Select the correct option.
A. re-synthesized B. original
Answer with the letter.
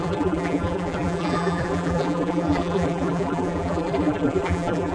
A